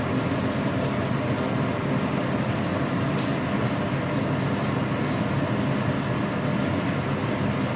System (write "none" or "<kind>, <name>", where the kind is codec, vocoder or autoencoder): none